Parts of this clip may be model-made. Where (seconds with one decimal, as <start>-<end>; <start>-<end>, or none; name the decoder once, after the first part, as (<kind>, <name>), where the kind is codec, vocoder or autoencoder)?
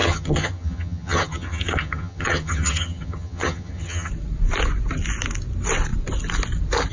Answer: 0.0-4.1 (vocoder, HiFi-GAN)